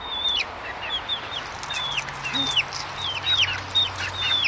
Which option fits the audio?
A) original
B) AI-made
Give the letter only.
A